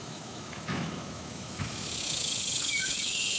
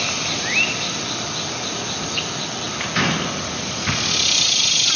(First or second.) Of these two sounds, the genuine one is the second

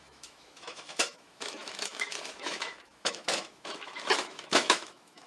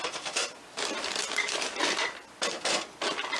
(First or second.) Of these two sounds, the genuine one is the second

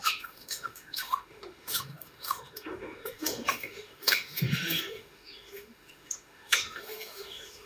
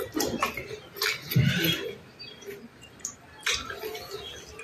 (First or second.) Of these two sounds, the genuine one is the second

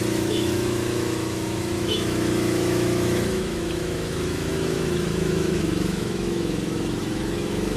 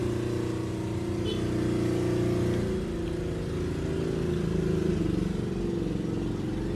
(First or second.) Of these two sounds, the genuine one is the second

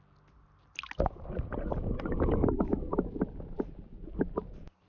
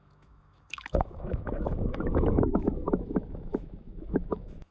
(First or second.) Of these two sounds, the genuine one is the first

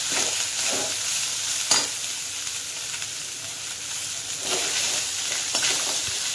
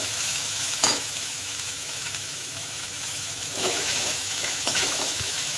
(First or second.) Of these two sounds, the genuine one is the first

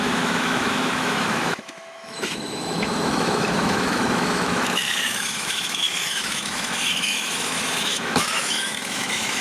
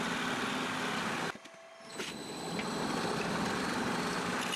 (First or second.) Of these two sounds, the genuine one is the second